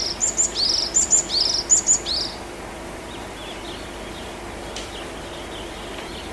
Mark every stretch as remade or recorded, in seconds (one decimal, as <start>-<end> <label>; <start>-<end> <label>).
0.0-6.3 recorded